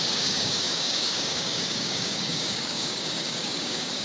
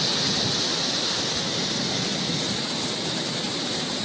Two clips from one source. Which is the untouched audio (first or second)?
second